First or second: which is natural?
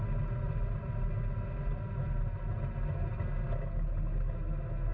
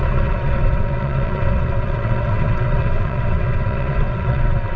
first